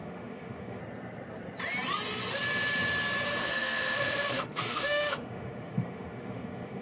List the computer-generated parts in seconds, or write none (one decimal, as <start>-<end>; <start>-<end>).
0.0-0.8; 3.4-6.8